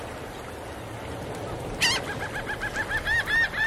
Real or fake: real